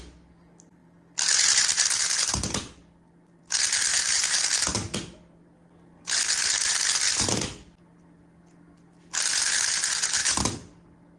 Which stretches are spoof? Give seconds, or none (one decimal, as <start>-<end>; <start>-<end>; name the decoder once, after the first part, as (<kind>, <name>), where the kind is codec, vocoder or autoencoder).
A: none